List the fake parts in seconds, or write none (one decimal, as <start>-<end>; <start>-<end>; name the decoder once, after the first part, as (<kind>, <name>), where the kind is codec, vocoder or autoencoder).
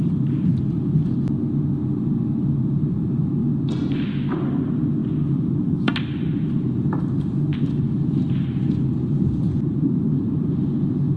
0.0-0.5 (vocoder, BigVGAN v2); 1.9-3.4; 4.5-11.2